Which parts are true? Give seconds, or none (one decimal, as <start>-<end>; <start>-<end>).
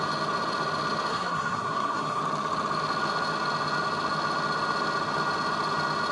0.0-1.1; 2.2-6.1